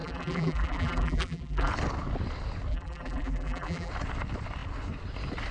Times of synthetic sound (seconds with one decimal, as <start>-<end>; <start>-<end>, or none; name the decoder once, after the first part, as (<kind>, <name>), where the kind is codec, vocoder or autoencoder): 0.0-1.7 (vocoder, BigVGAN v2); 2.7-3.9